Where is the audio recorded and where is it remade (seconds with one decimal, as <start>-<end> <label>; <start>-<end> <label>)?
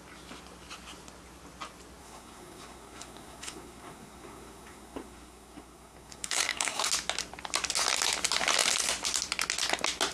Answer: 0.0-2.0 recorded; 2.0-6.9 remade; 6.9-10.1 recorded